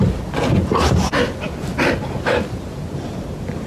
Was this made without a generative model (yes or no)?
no